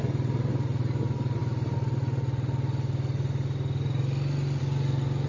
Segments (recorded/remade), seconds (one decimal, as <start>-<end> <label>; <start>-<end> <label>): 0.0-5.3 recorded